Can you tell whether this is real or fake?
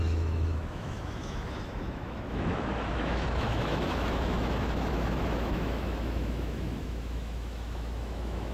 fake